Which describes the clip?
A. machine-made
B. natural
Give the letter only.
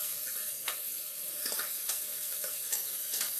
A